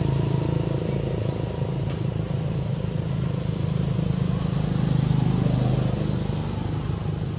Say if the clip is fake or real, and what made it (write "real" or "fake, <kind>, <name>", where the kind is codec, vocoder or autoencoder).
real